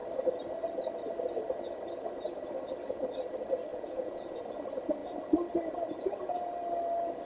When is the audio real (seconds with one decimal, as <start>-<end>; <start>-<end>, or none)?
0.0-3.7; 4.4-7.3